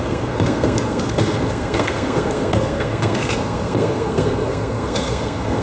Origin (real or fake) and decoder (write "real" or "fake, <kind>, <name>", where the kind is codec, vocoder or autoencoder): fake, codec, SNAC